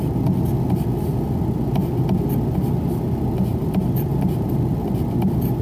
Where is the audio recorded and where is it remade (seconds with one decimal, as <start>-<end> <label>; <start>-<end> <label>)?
0.0-3.5 recorded; 3.5-4.7 remade; 4.7-5.6 recorded